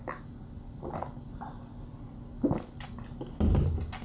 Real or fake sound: real